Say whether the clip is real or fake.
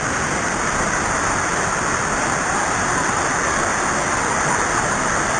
real